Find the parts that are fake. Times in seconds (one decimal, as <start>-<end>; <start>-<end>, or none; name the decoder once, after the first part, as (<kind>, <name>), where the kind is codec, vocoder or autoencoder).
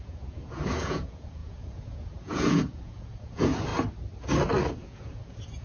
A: 0.0-3.7 (vocoder, Vocos); 4.7-5.6